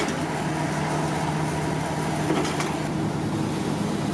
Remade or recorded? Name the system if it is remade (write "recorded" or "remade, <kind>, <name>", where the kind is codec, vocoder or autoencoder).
recorded